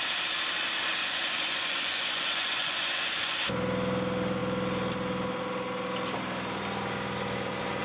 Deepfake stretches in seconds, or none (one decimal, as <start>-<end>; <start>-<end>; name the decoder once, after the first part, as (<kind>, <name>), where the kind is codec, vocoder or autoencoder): 1.0-3.4 (vocoder, Vocos)